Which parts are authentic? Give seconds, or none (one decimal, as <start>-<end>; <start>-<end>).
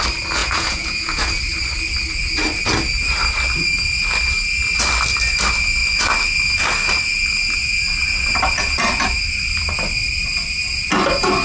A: 0.0-0.4; 1.3-11.4